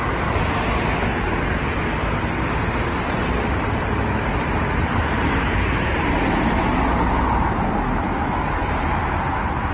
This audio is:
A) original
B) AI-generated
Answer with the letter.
A